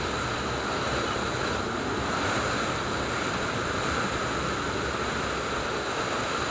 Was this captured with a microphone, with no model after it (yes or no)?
yes